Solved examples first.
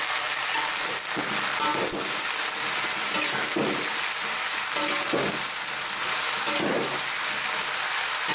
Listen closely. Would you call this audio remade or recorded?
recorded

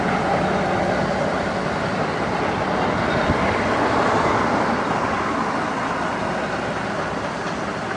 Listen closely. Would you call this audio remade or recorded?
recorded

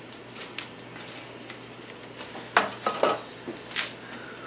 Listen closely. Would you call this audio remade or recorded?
recorded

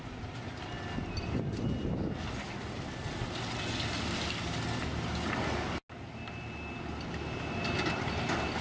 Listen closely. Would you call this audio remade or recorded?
recorded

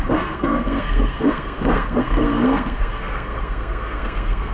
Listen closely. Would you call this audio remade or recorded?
remade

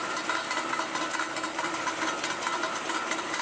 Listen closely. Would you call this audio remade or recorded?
recorded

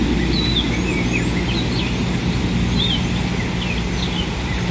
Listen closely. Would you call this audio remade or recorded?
recorded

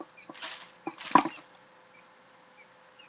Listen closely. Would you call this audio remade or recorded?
recorded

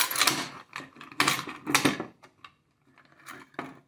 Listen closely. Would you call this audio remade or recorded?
recorded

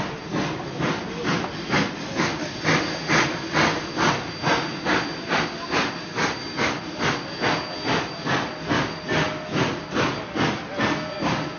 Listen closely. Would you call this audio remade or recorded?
recorded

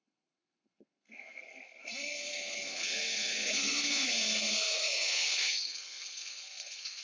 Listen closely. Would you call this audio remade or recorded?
remade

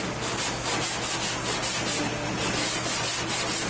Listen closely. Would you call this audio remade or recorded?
recorded